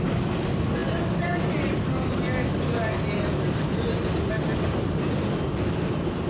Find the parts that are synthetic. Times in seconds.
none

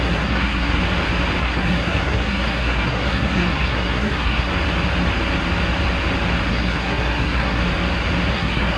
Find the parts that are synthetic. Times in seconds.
0.0-0.8 (codec, SNAC); 1.4-4.5; 6.5-7.6; 8.3-8.8

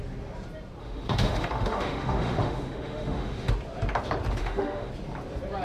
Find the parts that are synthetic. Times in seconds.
0.8-3.5 (autoencoder, DAC-VAE); 4.4-4.9

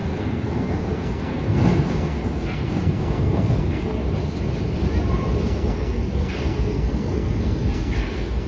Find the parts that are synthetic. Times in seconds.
0.0-4.0 (codec, SNAC); 5.4-8.5